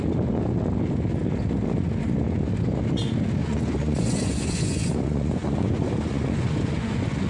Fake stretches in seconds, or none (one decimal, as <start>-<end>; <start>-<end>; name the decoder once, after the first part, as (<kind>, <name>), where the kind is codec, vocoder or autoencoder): 3.4-7.3 (vocoder, Vocos)